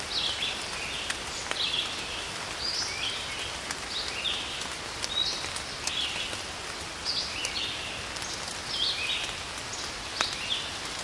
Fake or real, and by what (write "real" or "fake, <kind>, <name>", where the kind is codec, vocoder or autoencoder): real